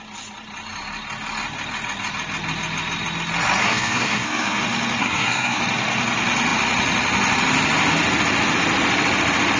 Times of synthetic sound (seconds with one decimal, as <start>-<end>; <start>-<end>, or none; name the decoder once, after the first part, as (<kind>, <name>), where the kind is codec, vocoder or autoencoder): 3.6-4.6 (codec, SNAC); 5.0-5.6